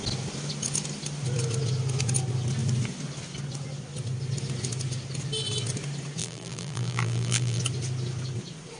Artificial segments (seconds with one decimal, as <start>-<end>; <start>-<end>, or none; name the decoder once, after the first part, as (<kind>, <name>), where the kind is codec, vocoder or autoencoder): 6.2-7.6 (vocoder, BigVGAN v2)